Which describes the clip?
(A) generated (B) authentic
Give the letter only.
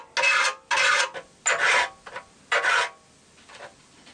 B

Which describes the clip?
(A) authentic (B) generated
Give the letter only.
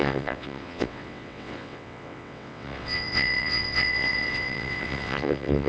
B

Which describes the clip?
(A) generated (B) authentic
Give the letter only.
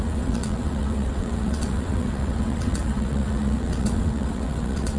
A